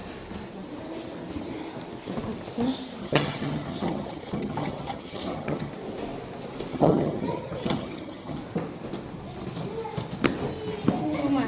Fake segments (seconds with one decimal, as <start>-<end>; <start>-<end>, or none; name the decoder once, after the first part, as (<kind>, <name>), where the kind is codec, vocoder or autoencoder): 3.0-5.7 (vocoder, HiFi-GAN); 6.7-8.4